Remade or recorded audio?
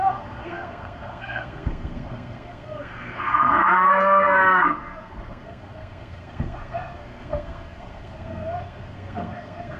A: remade